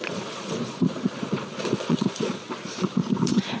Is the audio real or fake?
fake